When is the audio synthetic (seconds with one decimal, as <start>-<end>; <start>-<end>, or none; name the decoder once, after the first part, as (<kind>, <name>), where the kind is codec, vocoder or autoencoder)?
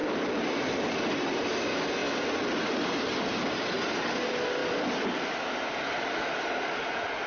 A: none